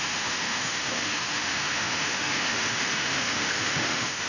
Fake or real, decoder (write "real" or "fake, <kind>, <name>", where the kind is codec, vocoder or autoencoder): fake, autoencoder, DAC-VAE